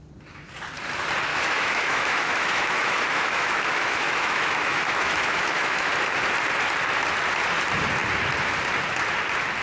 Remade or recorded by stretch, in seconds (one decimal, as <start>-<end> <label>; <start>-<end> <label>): 0.0-1.3 recorded; 1.3-5.9 remade; 5.9-9.6 recorded